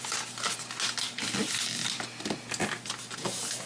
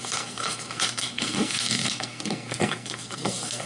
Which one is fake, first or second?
second